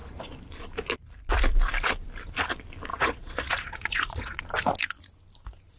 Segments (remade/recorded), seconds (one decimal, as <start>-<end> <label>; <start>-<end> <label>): 0.0-2.9 recorded; 2.9-4.4 remade; 4.4-5.8 recorded